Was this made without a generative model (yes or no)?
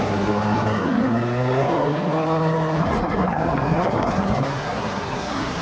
no